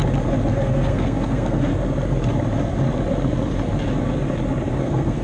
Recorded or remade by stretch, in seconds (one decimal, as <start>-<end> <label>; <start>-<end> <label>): 0.0-0.5 recorded; 0.5-1.7 remade; 1.7-4.8 recorded; 4.8-5.2 remade